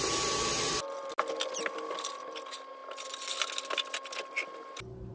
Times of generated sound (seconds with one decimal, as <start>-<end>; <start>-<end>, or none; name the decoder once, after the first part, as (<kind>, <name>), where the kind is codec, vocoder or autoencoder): none

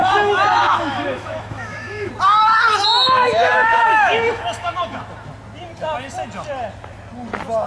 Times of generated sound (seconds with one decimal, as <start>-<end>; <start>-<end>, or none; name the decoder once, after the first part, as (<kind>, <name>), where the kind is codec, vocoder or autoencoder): 0.0-2.1 (autoencoder, DAC-VAE); 3.2-5.0

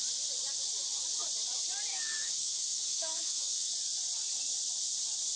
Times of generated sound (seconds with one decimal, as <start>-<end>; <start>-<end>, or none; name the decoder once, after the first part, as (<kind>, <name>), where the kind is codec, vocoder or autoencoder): 1.9-3.7 (autoencoder, DAC-VAE)

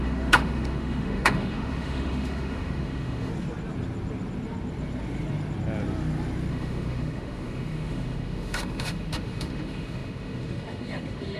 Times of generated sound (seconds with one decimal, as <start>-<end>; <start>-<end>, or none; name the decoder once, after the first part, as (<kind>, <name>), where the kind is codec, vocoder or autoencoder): 0.0-3.3 (autoencoder, DAC-VAE); 6.5-11.4

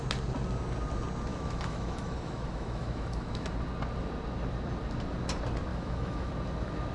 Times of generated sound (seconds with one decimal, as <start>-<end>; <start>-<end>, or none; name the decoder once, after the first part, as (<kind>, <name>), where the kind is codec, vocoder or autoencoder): 1.3-3.5 (autoencoder, DAC-VAE); 5.7-6.3